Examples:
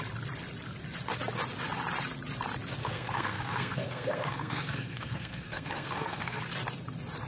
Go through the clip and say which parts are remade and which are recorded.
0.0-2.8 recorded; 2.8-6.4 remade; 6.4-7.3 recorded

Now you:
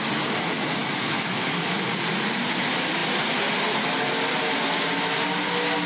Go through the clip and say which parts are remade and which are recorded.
0.0-0.8 recorded; 0.8-1.5 remade; 1.5-5.9 recorded